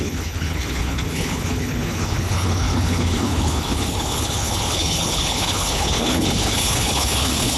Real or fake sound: fake